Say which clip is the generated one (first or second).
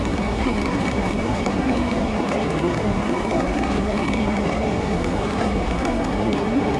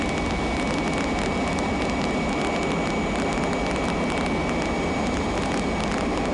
first